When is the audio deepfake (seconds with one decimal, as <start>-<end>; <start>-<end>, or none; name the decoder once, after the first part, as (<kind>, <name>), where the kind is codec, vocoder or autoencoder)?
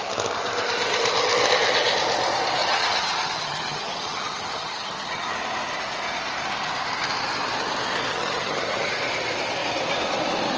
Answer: 2.6-5.3 (vocoder, HiFi-GAN); 8.1-8.9